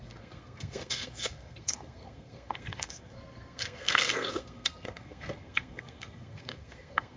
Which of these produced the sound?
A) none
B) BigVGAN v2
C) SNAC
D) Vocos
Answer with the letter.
C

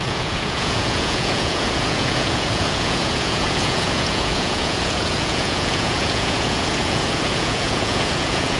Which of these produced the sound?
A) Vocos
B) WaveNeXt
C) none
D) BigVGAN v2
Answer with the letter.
A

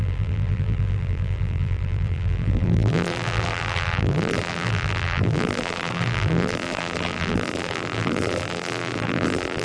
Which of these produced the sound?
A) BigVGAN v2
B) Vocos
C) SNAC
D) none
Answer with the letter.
A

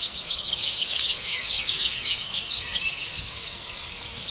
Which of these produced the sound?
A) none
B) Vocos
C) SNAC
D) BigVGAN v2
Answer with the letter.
C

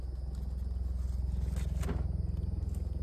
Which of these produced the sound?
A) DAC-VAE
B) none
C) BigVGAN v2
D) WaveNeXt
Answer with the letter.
B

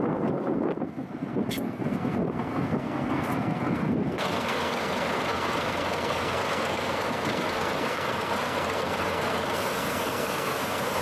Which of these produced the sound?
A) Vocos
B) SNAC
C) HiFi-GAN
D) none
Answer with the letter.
B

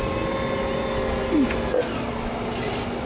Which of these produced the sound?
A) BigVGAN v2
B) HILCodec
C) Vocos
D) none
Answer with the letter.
D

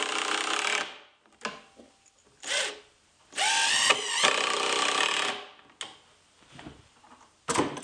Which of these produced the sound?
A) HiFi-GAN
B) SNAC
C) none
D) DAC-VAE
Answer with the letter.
C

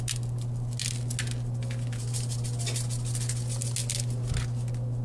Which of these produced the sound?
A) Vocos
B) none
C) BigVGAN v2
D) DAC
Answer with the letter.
B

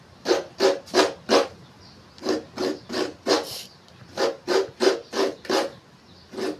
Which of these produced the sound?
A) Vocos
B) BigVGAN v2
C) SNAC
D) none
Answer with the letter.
D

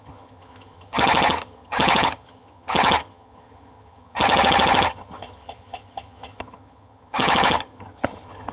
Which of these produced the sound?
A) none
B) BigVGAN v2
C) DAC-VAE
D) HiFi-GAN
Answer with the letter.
D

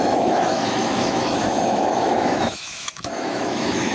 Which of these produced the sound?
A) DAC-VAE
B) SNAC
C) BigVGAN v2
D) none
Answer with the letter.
A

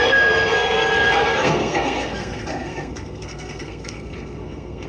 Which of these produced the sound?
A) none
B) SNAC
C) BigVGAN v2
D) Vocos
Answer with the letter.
B